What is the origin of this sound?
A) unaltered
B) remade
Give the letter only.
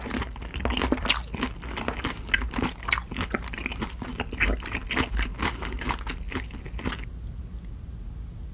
A